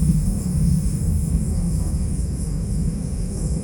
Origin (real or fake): fake